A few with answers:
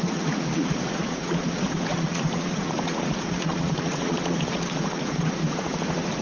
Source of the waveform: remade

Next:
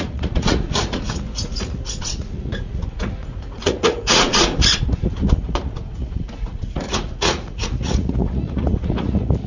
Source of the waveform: remade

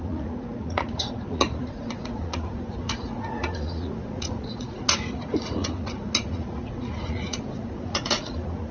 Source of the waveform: remade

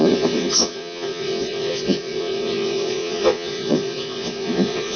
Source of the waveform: remade